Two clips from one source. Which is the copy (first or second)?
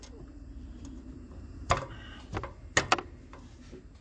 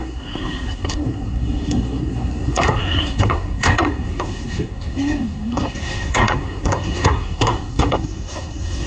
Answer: second